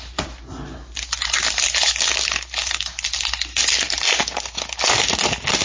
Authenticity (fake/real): real